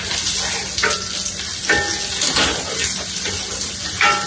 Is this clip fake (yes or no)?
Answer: no